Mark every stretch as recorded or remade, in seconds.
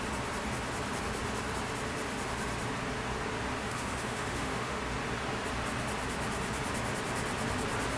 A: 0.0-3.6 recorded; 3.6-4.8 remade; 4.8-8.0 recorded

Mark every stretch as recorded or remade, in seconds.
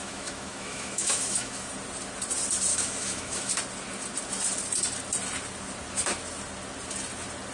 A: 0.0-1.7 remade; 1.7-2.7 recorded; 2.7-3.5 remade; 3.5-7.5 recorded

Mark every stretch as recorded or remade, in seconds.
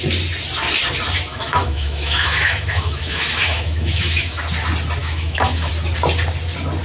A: 0.0-1.3 recorded; 1.3-4.4 remade; 4.4-5.0 recorded; 5.0-5.7 remade; 5.7-6.8 recorded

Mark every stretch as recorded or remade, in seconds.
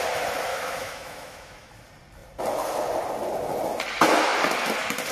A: 0.0-0.5 recorded; 0.5-1.7 remade; 1.7-5.1 recorded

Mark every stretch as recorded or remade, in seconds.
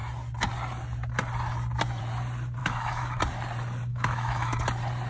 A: 0.0-2.6 recorded; 2.6-3.2 remade; 3.2-3.9 recorded; 3.9-4.6 remade; 4.6-5.1 recorded